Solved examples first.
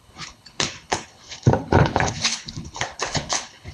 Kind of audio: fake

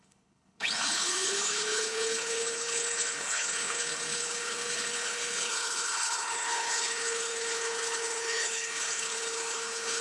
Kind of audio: fake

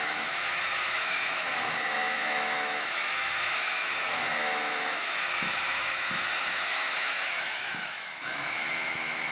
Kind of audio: fake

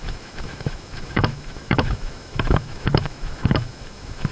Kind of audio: fake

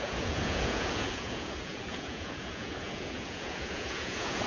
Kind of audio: fake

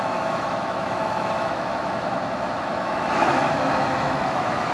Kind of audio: fake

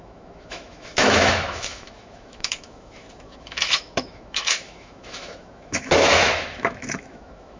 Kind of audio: fake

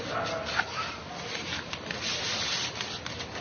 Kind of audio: real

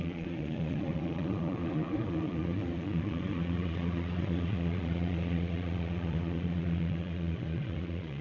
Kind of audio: fake